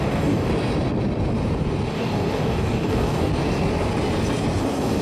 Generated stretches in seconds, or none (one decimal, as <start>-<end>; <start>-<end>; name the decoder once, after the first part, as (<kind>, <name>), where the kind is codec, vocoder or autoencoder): 0.0-0.5 (codec, DAC); 1.9-3.3; 4.6-5.0